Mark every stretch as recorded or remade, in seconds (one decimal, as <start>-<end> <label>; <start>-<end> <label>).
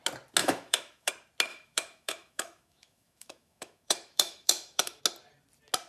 0.0-0.4 recorded; 0.4-1.1 remade; 1.1-1.5 recorded; 1.5-5.0 remade; 5.0-5.9 recorded